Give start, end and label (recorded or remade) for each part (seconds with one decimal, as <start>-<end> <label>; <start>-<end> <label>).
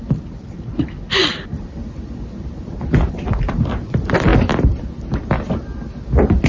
0.0-6.5 recorded